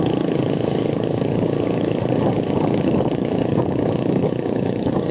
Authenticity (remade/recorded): remade